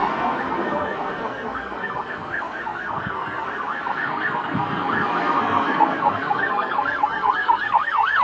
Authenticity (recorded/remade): remade